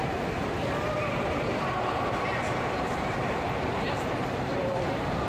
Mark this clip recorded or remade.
remade